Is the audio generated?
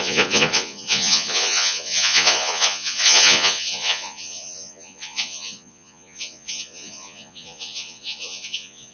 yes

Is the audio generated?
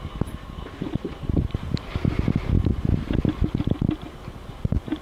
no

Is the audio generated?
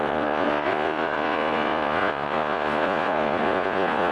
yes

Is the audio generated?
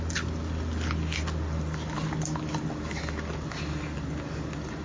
no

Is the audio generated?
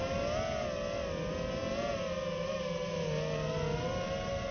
no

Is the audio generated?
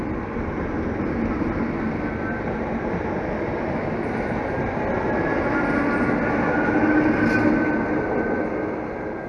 no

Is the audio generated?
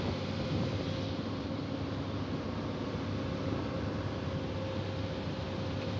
no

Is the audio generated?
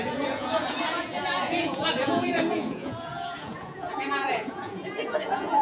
yes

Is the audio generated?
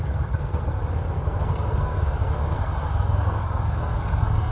yes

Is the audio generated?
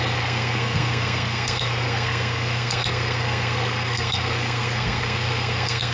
yes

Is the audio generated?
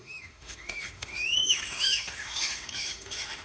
yes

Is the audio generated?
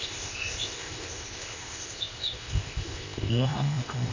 yes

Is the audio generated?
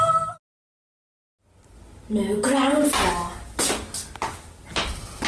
no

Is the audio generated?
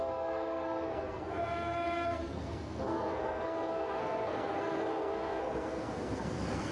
yes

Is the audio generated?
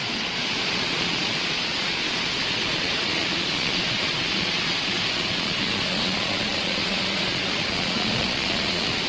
yes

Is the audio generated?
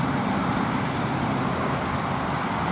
no